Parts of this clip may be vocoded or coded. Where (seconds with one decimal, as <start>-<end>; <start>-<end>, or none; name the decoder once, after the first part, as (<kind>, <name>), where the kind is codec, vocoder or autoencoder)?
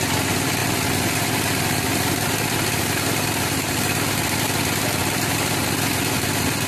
none